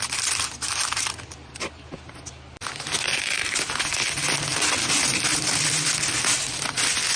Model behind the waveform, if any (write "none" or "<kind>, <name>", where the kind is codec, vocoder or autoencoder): none